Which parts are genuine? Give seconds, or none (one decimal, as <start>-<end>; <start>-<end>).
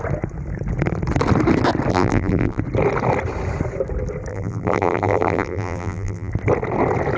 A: 0.0-1.9; 2.6-4.3; 6.3-7.2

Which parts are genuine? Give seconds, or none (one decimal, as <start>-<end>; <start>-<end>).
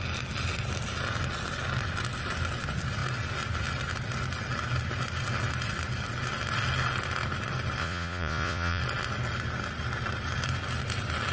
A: 0.0-7.8; 8.8-11.3